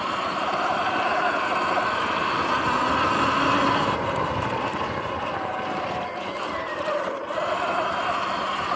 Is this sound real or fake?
real